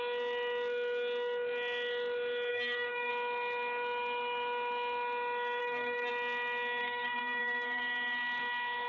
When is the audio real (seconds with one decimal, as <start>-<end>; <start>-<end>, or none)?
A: 0.0-2.5; 3.1-5.6; 6.1-6.8; 7.8-8.9